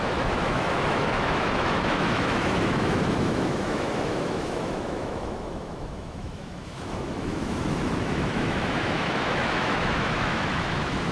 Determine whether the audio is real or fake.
fake